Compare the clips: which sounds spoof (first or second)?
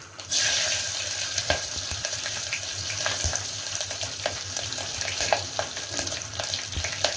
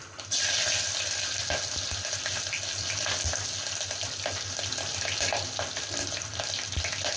first